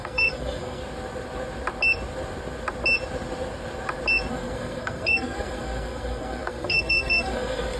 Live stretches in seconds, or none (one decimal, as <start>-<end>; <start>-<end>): 0.8-4.3